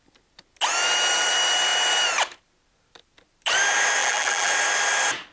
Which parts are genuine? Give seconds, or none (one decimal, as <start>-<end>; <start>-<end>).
0.0-4.0; 4.5-5.3